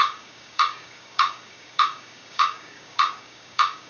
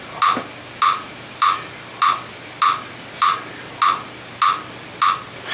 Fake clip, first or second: first